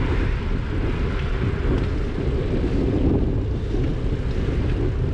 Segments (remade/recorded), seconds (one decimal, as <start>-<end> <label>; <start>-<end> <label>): 0.0-5.1 recorded